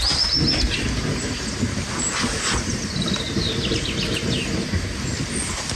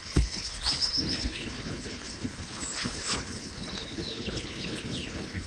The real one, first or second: first